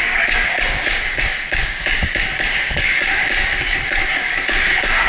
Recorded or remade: remade